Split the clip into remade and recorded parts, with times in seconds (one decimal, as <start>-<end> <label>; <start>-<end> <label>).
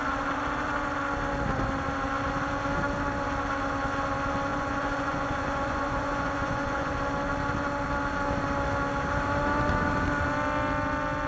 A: 0.0-4.5 recorded; 4.5-6.9 remade; 6.9-11.3 recorded